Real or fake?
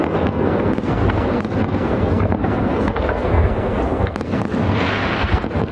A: fake